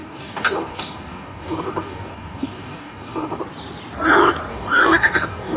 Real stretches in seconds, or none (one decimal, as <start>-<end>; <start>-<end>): 3.4-4.5